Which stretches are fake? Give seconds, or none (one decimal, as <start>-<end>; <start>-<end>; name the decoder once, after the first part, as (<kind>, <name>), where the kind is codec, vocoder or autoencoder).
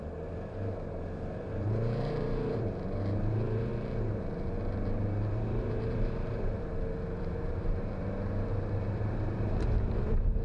0.0-3.7 (vocoder, BigVGAN v2); 4.2-10.4